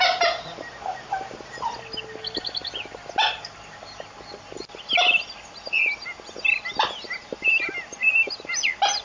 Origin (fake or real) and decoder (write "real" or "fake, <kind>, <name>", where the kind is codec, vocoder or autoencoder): real